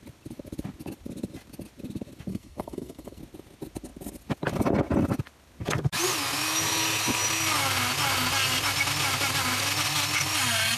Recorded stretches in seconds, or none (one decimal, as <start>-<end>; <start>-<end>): 0.0-2.3; 3.2-10.8

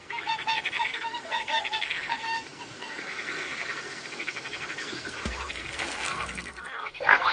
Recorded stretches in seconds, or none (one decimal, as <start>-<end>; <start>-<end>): none